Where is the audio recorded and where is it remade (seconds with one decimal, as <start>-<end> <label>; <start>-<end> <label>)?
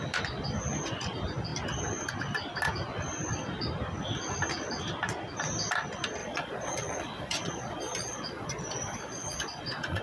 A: 0.0-6.2 recorded; 6.2-10.0 remade